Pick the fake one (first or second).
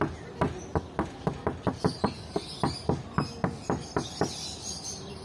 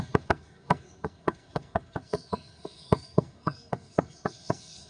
second